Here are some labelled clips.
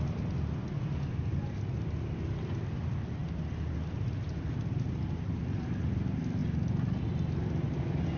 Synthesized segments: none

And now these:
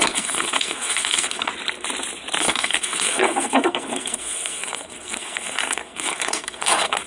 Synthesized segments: 0.0-1.5 (codec, SNAC); 2.4-7.1

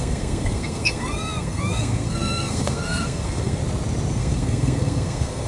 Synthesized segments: 0.0-3.6 (codec, SNAC); 4.2-5.5

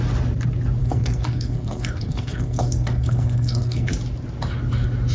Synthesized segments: 0.8-3.9 (codec, SNAC)

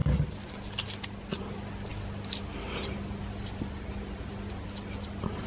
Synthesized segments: none

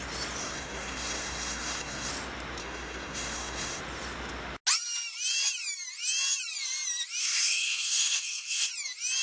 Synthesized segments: 0.4-2.1 (codec, SNAC); 2.6-3.8; 7.2-8.7